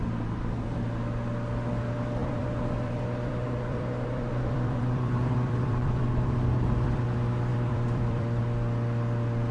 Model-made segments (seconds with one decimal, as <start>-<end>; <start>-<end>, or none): 2.2-7.0; 7.5-8.4